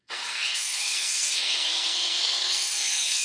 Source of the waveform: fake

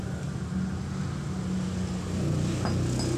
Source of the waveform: real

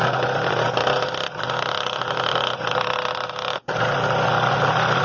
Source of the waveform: real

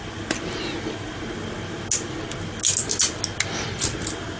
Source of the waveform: real